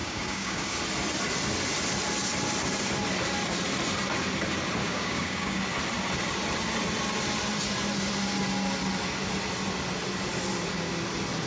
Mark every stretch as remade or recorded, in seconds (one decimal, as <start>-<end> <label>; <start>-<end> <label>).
0.0-0.8 remade; 0.8-4.8 recorded; 4.8-5.6 remade; 5.6-11.5 recorded